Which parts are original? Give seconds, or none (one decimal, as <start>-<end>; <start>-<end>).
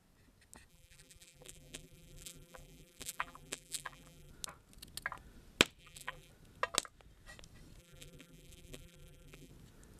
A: 0.0-0.7; 4.3-5.8; 6.3-7.8; 9.5-10.0